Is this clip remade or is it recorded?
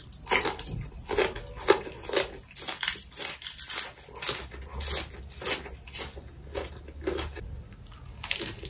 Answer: recorded